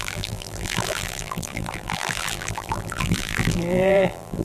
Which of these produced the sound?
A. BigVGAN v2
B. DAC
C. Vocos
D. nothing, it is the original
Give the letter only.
A